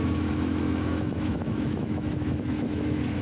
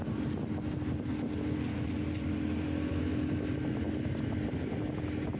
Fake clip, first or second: first